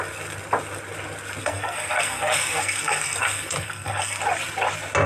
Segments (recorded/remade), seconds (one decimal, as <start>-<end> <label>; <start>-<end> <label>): 0.0-1.4 recorded; 1.4-4.2 remade; 4.2-5.1 recorded